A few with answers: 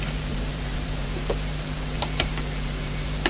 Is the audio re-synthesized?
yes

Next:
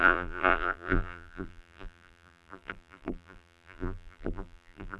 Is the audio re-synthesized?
yes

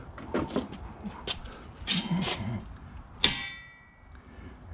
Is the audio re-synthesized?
no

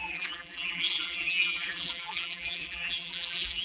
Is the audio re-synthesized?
yes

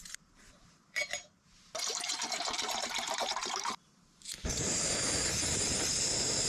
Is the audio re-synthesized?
yes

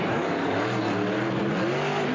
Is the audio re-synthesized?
no